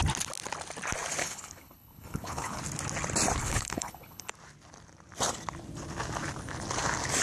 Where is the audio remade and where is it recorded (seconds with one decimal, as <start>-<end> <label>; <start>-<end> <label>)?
0.0-1.2 recorded; 1.2-2.6 remade; 2.6-3.4 recorded; 3.4-4.3 remade; 4.3-7.2 recorded